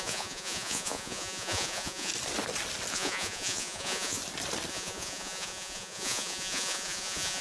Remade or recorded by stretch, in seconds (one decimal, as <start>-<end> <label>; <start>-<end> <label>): 0.0-2.1 remade; 2.1-2.9 recorded; 2.9-4.2 remade; 4.2-4.7 recorded; 4.7-7.4 remade